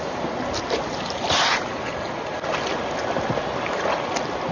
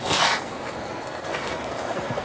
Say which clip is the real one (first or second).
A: first